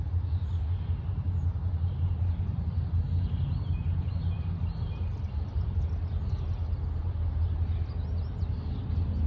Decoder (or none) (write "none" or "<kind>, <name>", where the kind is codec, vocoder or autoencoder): none